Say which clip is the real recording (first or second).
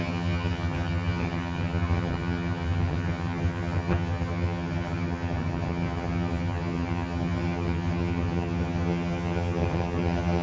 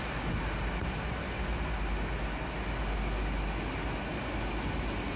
second